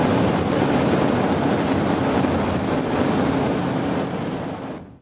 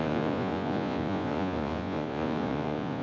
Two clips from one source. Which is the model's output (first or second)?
second